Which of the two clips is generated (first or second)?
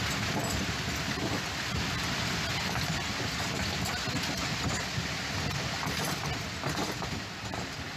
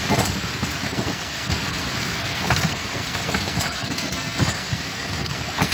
second